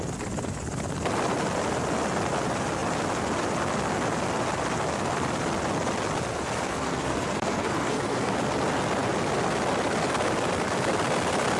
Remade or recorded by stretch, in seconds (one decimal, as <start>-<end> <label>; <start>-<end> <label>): 0.0-6.7 recorded; 6.7-8.3 remade; 8.3-11.6 recorded